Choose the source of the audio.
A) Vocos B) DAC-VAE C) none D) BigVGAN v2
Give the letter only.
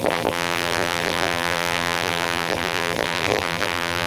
D